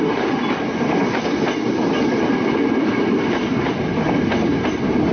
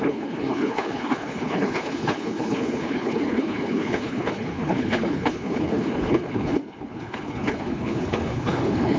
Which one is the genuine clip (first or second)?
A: first